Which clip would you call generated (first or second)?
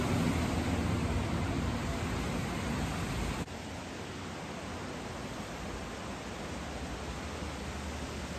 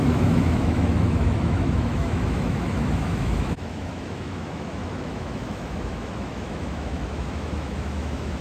second